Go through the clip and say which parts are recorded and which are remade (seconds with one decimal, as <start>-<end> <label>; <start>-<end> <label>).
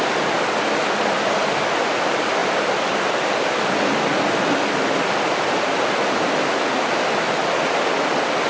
0.0-8.5 recorded